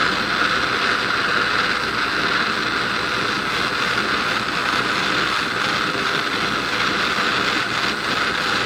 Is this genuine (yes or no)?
yes